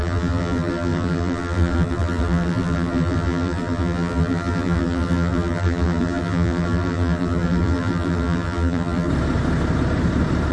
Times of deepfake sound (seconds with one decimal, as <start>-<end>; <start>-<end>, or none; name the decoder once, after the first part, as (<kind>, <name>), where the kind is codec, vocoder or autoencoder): 0.0-9.1 (vocoder, BigVGAN v2)